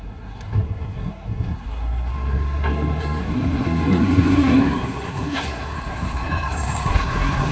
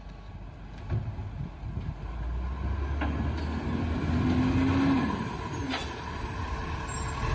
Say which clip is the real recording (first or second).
second